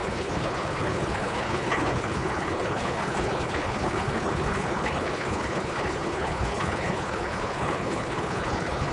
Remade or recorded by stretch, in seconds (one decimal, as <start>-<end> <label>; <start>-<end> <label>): 0.0-8.9 remade